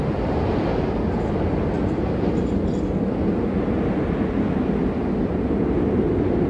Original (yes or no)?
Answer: yes